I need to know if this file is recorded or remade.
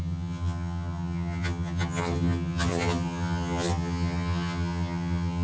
remade